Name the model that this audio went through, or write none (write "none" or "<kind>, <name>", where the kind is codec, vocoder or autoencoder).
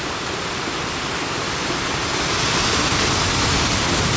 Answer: none